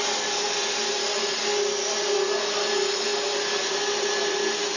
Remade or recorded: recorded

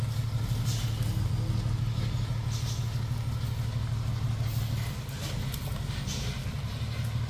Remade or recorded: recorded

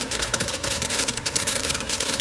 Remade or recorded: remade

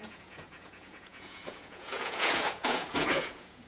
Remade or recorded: remade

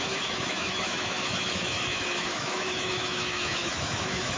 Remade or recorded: remade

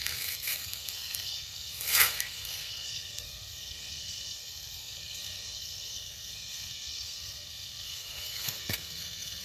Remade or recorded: remade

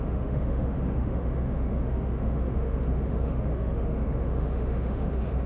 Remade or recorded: remade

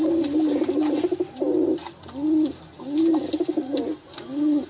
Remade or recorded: recorded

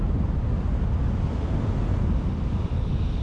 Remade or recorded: recorded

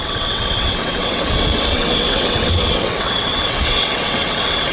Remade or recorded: remade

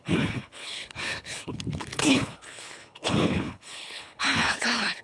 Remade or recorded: remade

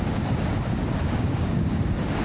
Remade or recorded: remade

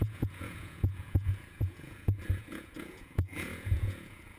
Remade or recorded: remade